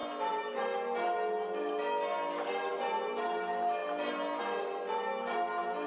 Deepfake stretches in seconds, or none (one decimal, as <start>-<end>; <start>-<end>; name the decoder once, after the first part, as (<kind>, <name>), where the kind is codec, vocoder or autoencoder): none